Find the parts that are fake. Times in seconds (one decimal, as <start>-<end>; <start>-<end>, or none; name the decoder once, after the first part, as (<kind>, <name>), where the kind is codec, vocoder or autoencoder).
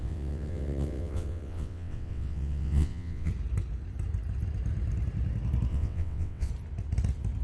0.0-3.3 (vocoder, WaveNeXt); 5.7-6.5